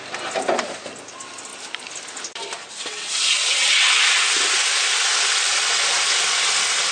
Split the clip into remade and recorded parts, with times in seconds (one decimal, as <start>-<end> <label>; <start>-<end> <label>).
0.0-6.9 recorded